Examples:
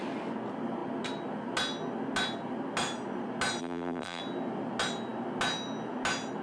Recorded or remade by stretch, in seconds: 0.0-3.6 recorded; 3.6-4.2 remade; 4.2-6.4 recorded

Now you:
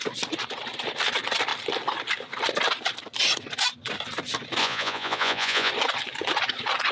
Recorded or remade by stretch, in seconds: 0.0-4.6 recorded; 4.6-5.7 remade; 5.7-6.9 recorded

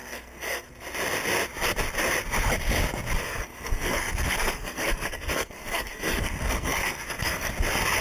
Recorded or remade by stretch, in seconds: 0.0-0.7 remade; 0.7-3.2 recorded; 3.2-7.5 remade; 7.5-8.0 recorded

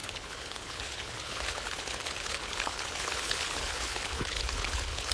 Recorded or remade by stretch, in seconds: 0.0-5.1 remade

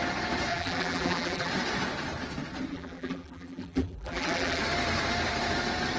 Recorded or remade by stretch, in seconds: 0.0-0.5 recorded; 0.5-1.5 remade; 1.5-2.7 recorded; 2.7-4.6 remade; 4.6-6.0 recorded

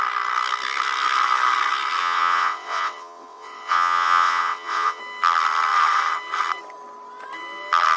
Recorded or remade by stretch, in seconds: 0.0-2.0 recorded; 2.0-5.0 remade; 5.0-8.0 recorded

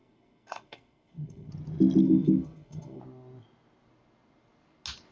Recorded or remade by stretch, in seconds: 0.0-1.5 remade; 1.5-2.0 recorded; 2.0-3.0 remade; 3.0-5.1 recorded